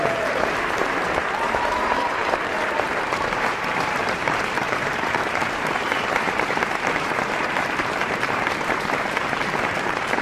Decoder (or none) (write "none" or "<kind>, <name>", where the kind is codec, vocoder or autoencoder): vocoder, BigVGAN v2